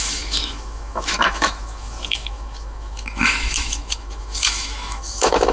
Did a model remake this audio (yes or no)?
yes